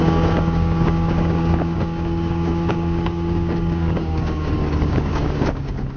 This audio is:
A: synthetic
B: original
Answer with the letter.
A